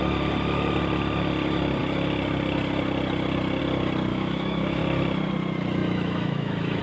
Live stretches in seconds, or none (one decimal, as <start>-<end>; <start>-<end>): 0.0-4.1; 4.8-5.8